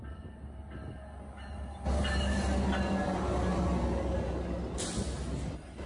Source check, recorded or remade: recorded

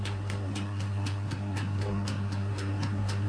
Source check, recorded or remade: remade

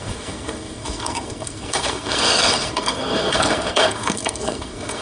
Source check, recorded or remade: remade